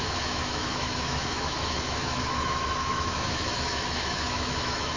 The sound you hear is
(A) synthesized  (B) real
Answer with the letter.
A